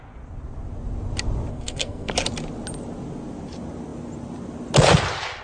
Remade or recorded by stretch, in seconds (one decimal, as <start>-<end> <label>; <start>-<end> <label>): 0.0-1.5 recorded; 1.5-2.1 remade; 2.1-5.4 recorded